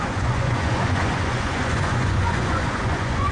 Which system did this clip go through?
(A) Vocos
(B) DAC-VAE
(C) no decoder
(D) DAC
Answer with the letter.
A